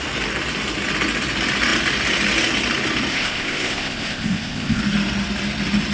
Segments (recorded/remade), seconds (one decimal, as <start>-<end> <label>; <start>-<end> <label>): 0.0-3.1 recorded; 3.1-4.8 remade; 4.8-5.9 recorded